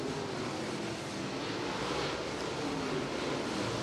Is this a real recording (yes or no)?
yes